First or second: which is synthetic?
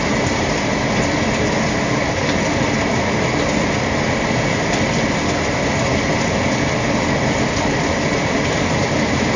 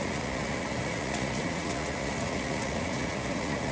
second